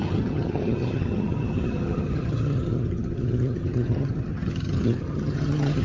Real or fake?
fake